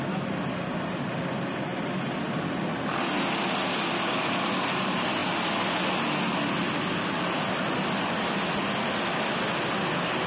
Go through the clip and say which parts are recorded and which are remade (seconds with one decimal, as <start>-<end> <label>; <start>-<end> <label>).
0.0-10.3 recorded